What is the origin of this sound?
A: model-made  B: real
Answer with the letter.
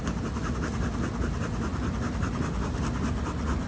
B